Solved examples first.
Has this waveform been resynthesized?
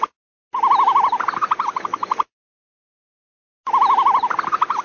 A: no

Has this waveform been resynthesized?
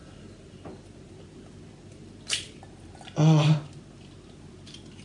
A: no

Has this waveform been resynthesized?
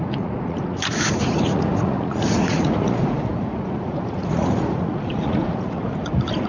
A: yes